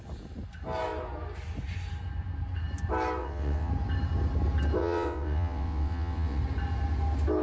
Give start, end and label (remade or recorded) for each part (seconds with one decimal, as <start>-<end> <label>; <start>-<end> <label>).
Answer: 0.0-3.2 recorded; 3.2-3.7 remade; 3.7-4.8 recorded; 4.8-6.4 remade; 6.4-7.4 recorded